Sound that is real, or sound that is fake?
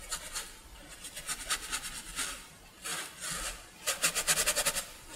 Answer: real